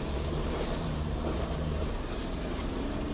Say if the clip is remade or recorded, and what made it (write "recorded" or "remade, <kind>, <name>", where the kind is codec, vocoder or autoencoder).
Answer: remade, vocoder, BigVGAN v2